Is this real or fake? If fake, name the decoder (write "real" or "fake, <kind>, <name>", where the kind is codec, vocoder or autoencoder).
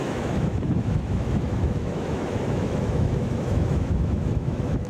fake, autoencoder, DAC-VAE